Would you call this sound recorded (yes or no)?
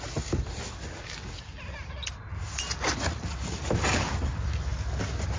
yes